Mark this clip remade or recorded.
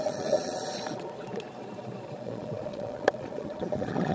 remade